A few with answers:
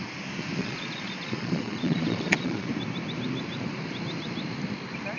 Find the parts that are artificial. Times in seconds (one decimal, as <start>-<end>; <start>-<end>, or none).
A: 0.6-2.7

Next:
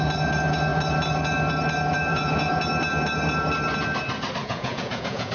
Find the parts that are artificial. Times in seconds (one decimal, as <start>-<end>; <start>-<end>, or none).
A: 2.1-2.6; 4.4-5.3

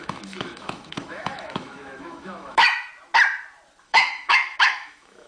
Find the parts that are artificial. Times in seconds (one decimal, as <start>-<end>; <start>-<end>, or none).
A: 0.0-2.9; 3.8-5.3

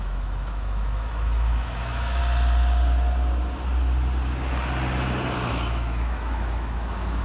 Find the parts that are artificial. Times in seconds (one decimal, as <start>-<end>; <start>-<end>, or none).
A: 0.0-2.2; 5.5-7.2

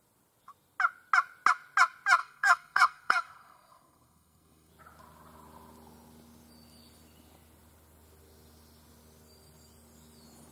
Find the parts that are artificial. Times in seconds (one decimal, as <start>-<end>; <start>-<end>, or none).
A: 2.2-4.7